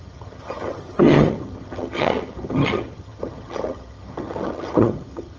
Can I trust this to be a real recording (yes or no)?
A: no